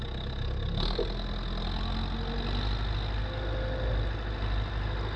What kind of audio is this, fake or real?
real